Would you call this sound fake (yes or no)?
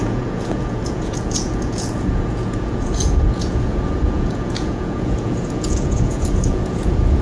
yes